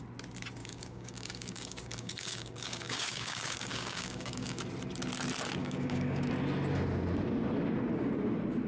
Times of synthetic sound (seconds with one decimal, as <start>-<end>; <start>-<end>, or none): 0.6-4.6; 5.6-6.3